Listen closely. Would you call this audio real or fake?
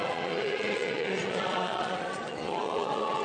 fake